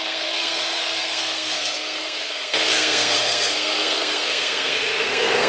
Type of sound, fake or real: fake